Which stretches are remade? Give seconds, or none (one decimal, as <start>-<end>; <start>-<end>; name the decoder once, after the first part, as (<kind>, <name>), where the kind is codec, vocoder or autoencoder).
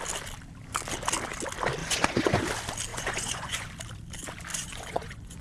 1.8-2.4 (vocoder, Vocos); 2.9-3.7; 4.5-5.4